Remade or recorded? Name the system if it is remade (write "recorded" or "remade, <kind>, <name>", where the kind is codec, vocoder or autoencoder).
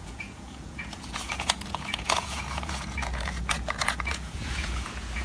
remade, vocoder, Vocos